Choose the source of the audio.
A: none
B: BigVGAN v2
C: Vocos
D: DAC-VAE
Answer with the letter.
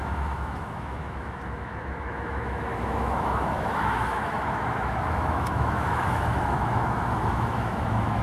D